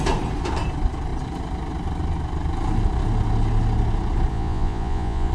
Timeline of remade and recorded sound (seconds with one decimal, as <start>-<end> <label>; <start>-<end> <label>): 0.0-4.3 recorded; 4.3-5.3 remade

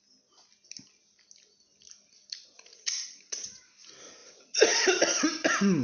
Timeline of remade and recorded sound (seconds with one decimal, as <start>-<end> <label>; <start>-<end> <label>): 0.0-2.7 recorded; 2.7-3.6 remade; 3.6-4.2 recorded; 4.2-5.0 remade; 5.0-5.8 recorded

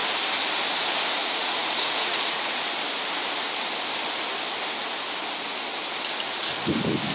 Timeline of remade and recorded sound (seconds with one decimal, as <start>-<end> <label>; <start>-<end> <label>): 0.0-1.2 recorded; 1.2-2.6 remade; 2.6-7.1 recorded

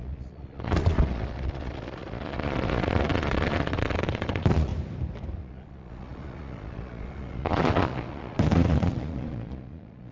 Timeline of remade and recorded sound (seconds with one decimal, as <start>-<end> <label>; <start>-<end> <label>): 0.0-4.7 remade; 4.7-5.4 recorded; 5.4-10.1 remade

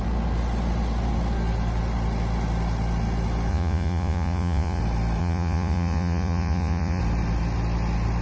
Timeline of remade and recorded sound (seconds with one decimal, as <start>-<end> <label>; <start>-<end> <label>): 0.0-3.5 recorded; 3.5-4.8 remade; 4.8-5.2 recorded; 5.2-7.0 remade; 7.0-8.2 recorded